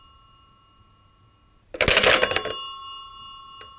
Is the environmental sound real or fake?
real